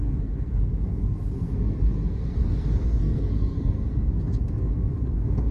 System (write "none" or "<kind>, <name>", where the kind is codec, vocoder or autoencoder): codec, SNAC